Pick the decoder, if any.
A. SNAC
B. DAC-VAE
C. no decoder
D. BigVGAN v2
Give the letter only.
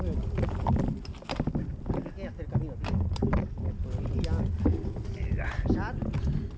C